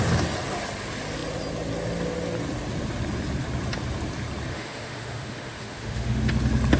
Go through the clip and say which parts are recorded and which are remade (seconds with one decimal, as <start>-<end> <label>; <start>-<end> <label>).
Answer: 0.0-4.5 recorded; 4.5-6.2 remade; 6.2-6.8 recorded